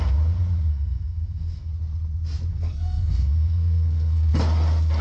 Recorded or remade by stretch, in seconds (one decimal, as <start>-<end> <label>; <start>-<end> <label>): 0.0-0.7 recorded; 0.7-1.7 remade; 1.7-2.5 recorded; 2.5-4.3 remade; 4.3-5.0 recorded